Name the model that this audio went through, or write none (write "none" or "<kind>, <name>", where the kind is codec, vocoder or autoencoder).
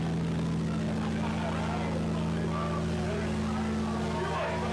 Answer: none